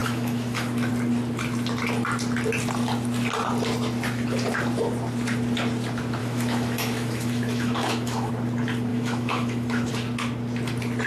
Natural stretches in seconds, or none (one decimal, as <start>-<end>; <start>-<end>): 0.9-6.2; 8.3-8.9; 9.9-11.1